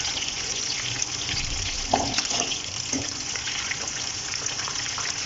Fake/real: fake